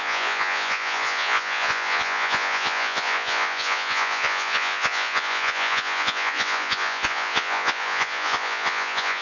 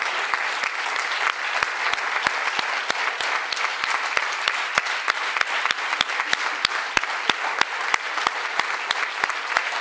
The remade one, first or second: first